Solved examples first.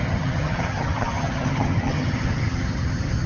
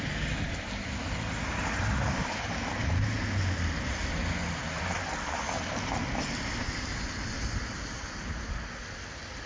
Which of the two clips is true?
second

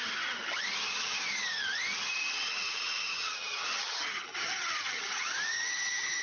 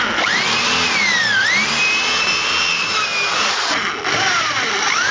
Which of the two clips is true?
second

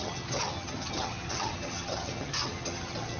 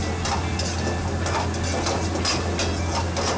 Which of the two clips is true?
second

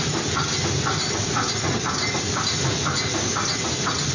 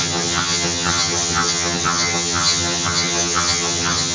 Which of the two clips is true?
first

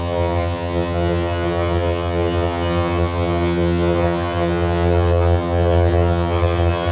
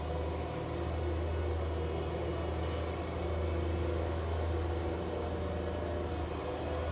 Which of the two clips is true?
second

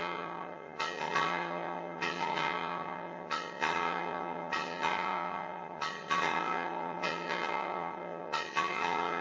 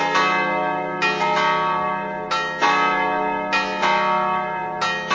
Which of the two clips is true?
second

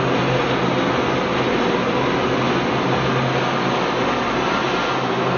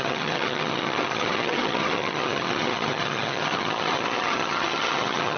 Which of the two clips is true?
first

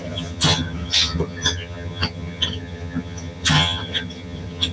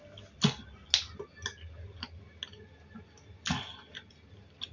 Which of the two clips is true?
second